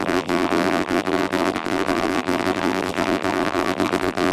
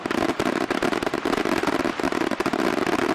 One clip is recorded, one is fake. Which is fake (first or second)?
first